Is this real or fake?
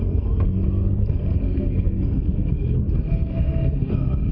fake